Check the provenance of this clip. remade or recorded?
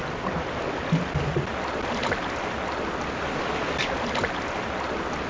recorded